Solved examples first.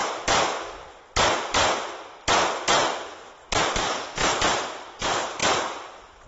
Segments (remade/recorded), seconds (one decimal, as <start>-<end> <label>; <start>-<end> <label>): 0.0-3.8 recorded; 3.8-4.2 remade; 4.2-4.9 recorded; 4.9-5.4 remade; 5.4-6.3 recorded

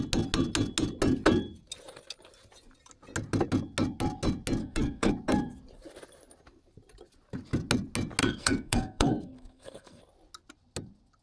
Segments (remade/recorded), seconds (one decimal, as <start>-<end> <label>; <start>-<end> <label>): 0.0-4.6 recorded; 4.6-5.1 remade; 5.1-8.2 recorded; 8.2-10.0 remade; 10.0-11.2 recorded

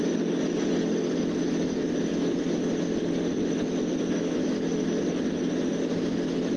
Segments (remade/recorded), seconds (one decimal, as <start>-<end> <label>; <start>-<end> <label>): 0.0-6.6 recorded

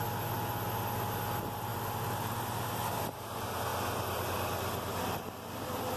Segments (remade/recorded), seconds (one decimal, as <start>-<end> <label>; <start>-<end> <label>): 0.0-6.0 recorded

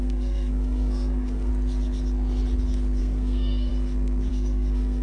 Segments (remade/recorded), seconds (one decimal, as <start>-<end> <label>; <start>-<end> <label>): 0.0-1.5 remade; 1.5-3.0 recorded; 3.0-3.7 remade; 3.7-4.3 recorded; 4.3-5.0 remade

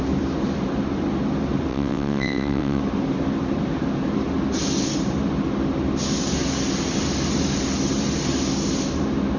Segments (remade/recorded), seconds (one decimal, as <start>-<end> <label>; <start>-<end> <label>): 0.0-1.7 recorded; 1.7-2.8 remade; 2.8-9.4 recorded